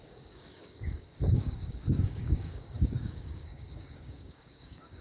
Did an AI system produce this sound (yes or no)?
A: yes